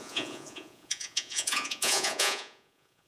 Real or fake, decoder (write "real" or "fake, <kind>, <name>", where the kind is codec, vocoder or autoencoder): fake, vocoder, Vocos